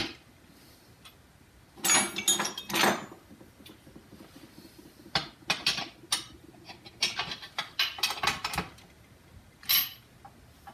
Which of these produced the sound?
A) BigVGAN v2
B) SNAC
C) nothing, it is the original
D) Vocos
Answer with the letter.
C